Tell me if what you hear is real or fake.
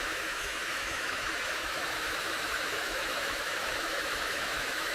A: fake